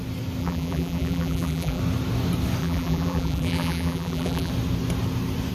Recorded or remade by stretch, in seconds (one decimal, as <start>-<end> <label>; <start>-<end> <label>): 0.0-0.4 recorded; 0.4-1.8 remade; 1.8-2.6 recorded; 2.6-4.5 remade; 4.5-5.5 recorded